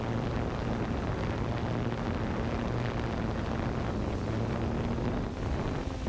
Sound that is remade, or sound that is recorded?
recorded